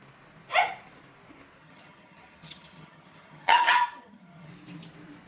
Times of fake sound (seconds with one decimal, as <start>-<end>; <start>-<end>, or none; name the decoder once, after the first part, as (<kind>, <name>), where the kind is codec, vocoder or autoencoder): 1.6-4.5 (vocoder, HiFi-GAN)